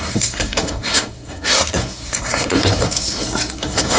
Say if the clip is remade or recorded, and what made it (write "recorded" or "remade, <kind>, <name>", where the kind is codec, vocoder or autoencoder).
remade, codec, SNAC